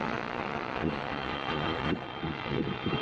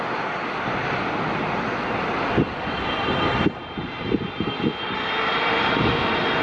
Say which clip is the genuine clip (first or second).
second